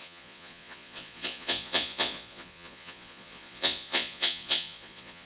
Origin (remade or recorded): remade